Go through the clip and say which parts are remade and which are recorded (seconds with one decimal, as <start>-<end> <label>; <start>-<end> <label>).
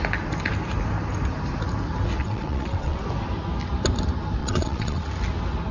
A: 0.0-2.2 recorded; 2.2-3.0 remade; 3.0-4.4 recorded; 4.4-5.1 remade; 5.1-5.7 recorded